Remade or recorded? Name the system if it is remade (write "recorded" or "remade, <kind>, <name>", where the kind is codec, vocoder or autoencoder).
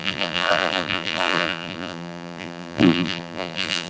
remade, vocoder, BigVGAN v2